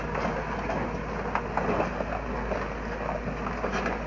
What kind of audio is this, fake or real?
real